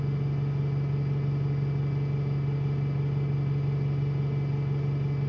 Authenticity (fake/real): real